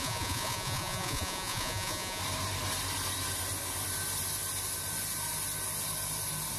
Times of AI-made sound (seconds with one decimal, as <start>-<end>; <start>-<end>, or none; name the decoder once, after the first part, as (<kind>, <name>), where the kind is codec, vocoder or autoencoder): 0.0-2.2 (vocoder, Vocos)